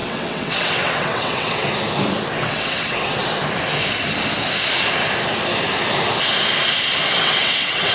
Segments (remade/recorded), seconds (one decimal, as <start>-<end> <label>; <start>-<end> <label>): 0.0-1.6 remade; 1.6-2.4 recorded; 2.4-3.2 remade; 3.2-7.2 recorded; 7.2-7.9 remade